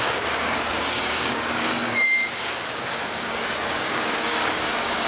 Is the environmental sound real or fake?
fake